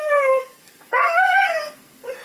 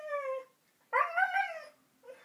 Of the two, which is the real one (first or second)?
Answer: second